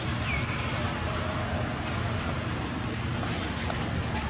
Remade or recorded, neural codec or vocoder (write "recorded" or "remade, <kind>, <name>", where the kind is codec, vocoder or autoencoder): recorded